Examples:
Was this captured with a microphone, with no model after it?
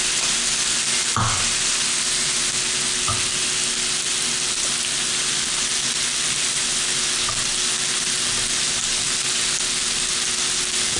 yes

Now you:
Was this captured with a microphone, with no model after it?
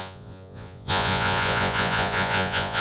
no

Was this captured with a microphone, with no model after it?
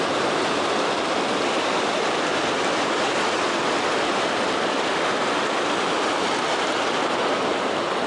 yes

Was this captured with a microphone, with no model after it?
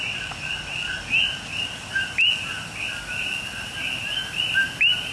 yes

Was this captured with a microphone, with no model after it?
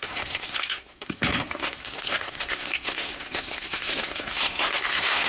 no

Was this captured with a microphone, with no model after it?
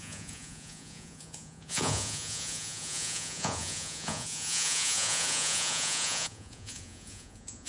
no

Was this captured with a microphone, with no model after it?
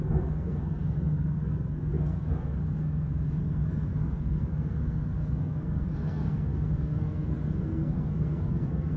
no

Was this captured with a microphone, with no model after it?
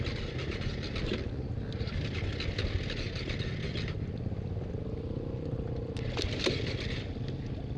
yes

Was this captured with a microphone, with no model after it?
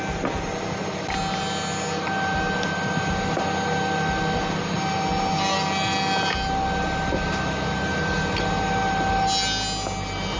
yes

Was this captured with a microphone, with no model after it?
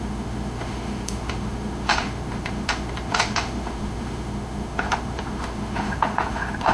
no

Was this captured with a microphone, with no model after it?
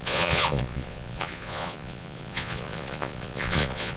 no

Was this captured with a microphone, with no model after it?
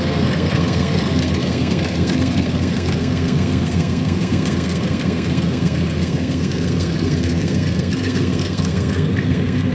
no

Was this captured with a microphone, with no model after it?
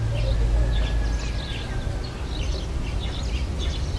yes